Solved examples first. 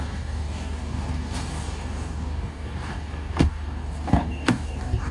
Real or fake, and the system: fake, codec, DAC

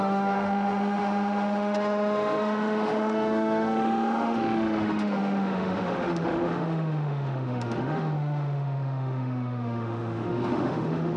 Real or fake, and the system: fake, autoencoder, DAC-VAE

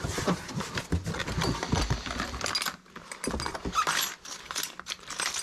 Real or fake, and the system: real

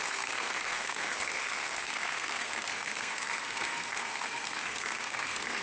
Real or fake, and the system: fake, codec, SNAC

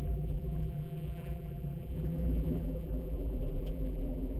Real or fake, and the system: fake, vocoder, BigVGAN v2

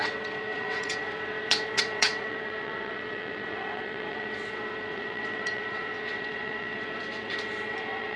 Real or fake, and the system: fake, vocoder, WaveNeXt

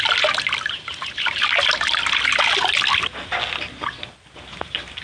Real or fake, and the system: real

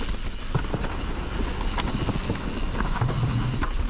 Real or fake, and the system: real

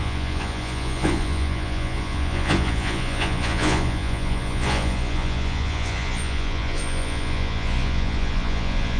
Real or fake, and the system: fake, vocoder, Vocos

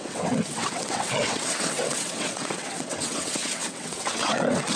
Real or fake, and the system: fake, vocoder, WaveNeXt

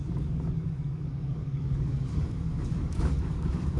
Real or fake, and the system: fake, codec, DAC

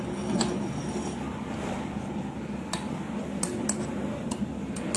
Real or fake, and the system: real